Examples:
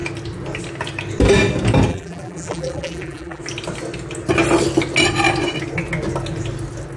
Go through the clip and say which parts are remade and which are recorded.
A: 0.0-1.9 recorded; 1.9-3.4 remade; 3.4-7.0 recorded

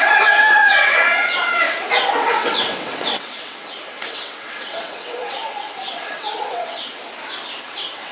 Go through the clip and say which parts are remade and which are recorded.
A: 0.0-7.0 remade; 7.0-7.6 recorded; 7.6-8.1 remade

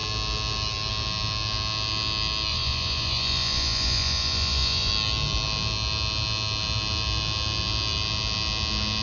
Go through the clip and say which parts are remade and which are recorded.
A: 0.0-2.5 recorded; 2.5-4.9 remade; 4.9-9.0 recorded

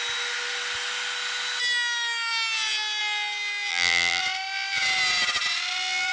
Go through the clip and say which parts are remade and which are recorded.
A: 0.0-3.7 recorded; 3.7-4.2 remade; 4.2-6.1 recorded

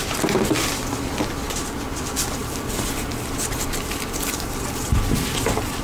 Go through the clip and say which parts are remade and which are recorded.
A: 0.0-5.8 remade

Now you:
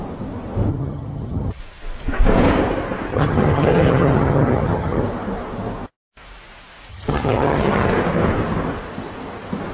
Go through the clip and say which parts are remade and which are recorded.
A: 0.0-0.7 recorded; 0.7-1.6 remade; 1.6-3.1 recorded; 3.1-5.0 remade; 5.0-6.9 recorded; 6.9-7.9 remade; 7.9-9.7 recorded

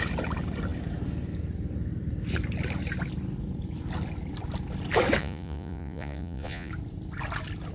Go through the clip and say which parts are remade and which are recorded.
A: 0.0-5.2 recorded; 5.2-6.7 remade; 6.7-7.7 recorded